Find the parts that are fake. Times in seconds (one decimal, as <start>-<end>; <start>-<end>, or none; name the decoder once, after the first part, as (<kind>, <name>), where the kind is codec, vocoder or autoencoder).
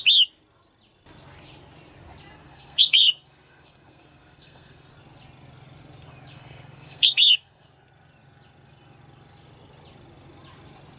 2.4-4.9 (codec, SNAC); 6.3-7.7